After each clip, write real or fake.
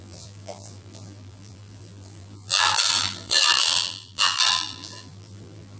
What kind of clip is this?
fake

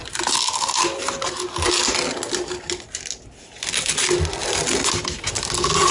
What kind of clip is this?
real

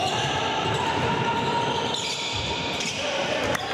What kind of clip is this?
fake